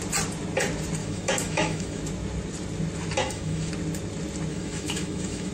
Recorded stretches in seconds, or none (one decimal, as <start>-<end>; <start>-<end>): 0.0-1.0; 2.0-3.2; 3.7-4.5